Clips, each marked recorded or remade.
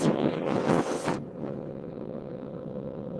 remade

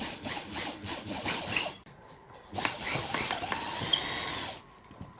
recorded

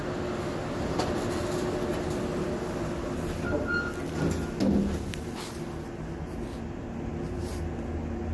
recorded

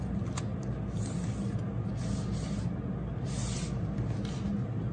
recorded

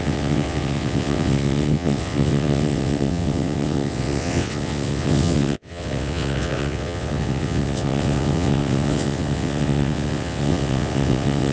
remade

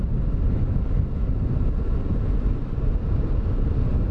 recorded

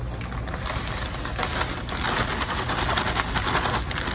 recorded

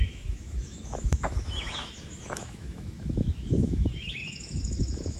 remade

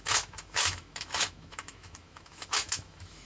remade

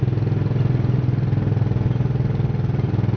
recorded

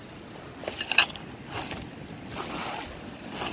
recorded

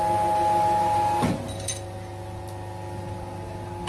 recorded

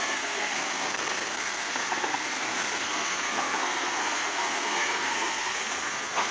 remade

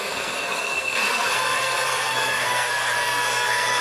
remade